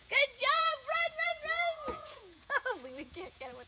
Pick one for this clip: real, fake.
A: fake